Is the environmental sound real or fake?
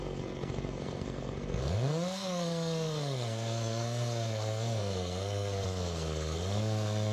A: fake